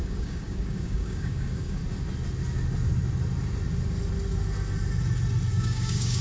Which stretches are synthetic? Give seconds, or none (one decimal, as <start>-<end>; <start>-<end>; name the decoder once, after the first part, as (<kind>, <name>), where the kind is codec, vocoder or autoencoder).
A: 0.0-1.8 (codec, DAC); 5.5-6.2